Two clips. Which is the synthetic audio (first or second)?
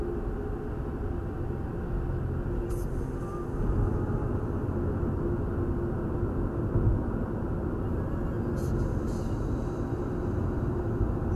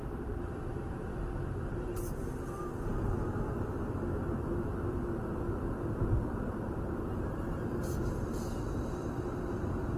second